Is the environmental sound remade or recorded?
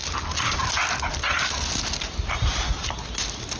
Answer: recorded